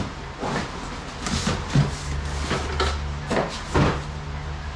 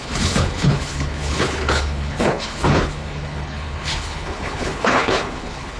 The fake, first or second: second